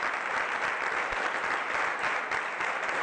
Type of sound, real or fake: real